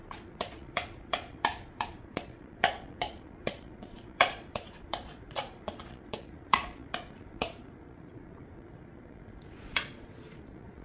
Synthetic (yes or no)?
yes